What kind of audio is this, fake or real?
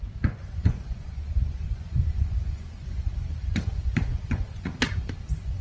fake